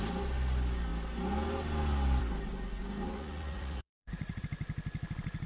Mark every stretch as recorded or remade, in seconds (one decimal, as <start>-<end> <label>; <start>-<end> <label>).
0.0-3.0 recorded; 3.0-4.4 remade; 4.4-5.5 recorded